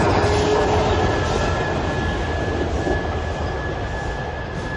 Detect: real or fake real